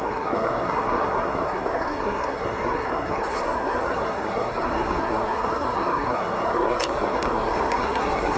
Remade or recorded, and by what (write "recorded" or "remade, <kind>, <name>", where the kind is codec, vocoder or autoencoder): remade, codec, SNAC